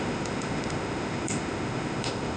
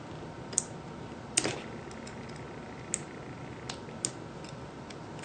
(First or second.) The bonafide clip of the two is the second